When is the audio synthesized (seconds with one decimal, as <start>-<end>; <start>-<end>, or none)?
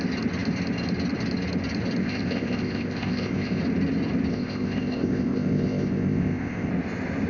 2.0-3.6; 4.3-6.7